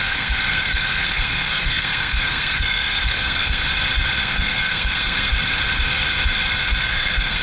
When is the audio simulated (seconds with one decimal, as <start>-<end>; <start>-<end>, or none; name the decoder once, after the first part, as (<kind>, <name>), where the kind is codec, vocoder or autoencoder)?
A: 0.0-3.6 (codec, SNAC); 4.2-5.3; 6.8-7.4